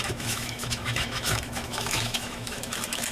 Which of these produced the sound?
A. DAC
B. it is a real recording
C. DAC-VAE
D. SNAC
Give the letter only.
C